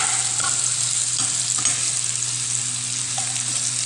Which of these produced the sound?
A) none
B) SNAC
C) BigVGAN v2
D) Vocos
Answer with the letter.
A